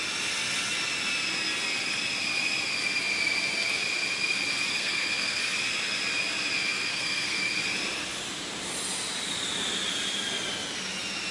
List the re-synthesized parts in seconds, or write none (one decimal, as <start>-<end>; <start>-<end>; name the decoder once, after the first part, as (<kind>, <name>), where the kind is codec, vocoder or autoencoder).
4.7-5.4 (codec, SNAC); 6.9-7.4